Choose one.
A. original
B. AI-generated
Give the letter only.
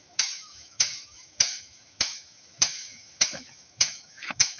B